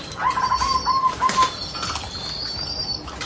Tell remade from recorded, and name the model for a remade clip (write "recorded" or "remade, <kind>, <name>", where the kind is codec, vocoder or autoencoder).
recorded